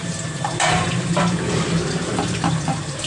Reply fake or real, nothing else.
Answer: fake